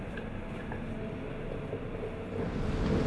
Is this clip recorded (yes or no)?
yes